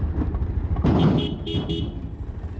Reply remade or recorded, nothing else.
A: recorded